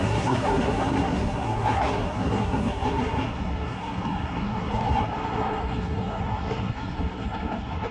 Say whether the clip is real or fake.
fake